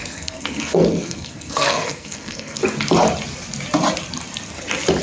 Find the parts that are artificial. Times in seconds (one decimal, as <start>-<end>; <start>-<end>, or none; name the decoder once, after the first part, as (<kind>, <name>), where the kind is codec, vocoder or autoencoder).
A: 0.0-2.6 (codec, SNAC)